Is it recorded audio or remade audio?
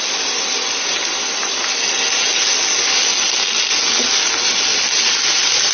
recorded